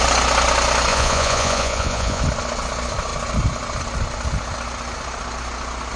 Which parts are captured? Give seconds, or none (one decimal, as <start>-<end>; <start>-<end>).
0.0-0.9; 2.2-6.0